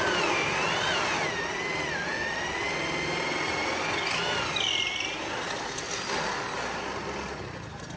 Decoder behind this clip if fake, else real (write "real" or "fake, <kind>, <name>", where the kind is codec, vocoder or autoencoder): real